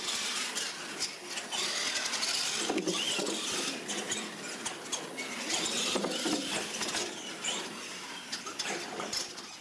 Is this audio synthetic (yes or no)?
no